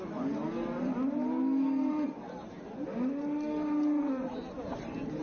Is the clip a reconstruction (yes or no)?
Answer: no